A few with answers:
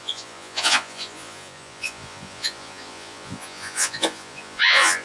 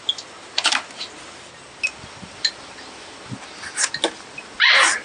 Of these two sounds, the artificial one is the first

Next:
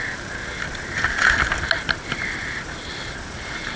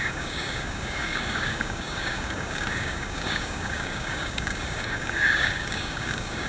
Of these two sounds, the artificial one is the second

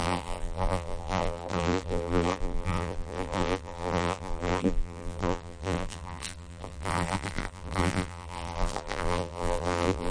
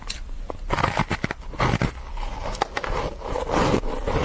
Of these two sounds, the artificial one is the first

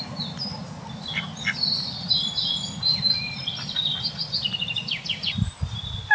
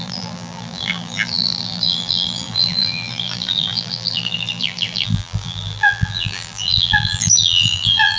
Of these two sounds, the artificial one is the second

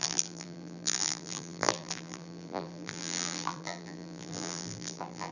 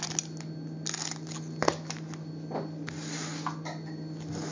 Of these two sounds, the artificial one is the first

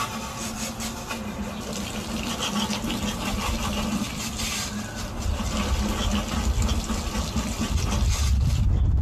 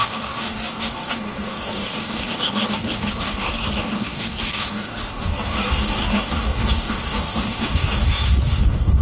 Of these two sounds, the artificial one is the second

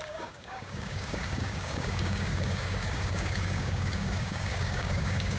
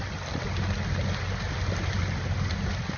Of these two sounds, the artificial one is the first